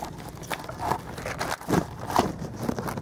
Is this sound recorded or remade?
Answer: recorded